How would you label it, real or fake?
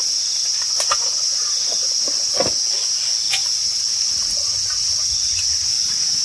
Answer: real